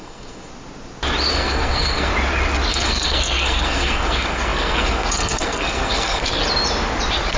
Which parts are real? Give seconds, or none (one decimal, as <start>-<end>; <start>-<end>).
0.5-1.3; 2.1-2.7; 6.4-7.4